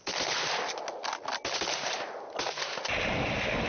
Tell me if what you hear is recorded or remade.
recorded